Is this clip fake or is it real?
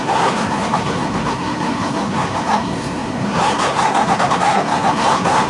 fake